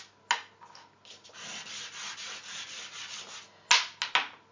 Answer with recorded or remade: recorded